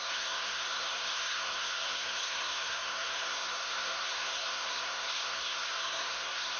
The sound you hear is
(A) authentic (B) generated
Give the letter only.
B